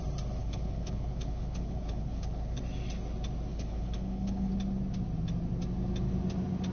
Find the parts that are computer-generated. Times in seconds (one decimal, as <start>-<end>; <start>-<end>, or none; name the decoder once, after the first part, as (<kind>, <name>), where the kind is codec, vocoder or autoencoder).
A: 0.4-2.6 (codec, HILCodec); 3.5-4.5